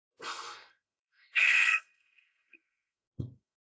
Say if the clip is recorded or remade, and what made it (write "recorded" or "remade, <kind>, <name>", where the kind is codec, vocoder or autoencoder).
remade, codec, SNAC